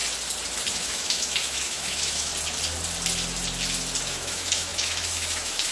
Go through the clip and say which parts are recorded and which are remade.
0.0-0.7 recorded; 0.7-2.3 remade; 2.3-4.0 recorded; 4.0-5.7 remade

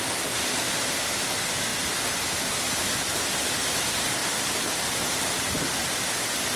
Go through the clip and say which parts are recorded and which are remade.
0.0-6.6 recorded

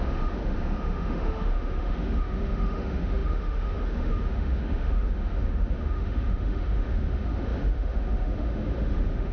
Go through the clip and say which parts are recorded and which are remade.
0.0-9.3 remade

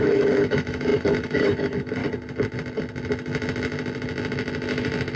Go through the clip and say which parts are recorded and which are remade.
0.0-2.0 remade; 2.0-5.2 recorded